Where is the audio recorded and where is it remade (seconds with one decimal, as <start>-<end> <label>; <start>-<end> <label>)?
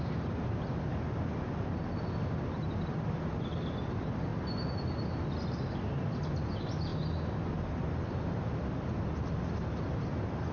0.0-10.5 recorded